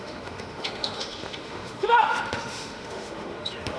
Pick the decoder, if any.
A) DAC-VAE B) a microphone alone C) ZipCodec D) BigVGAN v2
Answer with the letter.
A